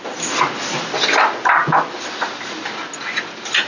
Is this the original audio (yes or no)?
yes